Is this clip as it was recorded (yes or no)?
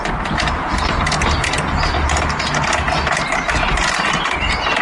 yes